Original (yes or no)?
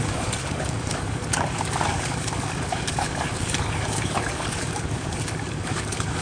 no